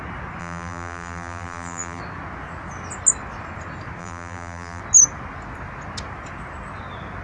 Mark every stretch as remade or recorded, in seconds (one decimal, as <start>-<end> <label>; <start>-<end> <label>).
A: 0.0-0.4 recorded; 0.4-2.0 remade; 2.0-4.0 recorded; 4.0-4.8 remade; 4.8-7.2 recorded